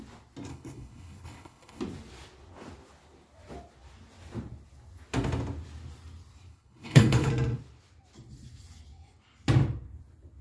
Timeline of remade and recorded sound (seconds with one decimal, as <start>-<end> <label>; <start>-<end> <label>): 0.0-0.5 recorded; 0.5-1.8 remade; 1.8-6.5 recorded; 6.5-7.3 remade; 7.3-10.4 recorded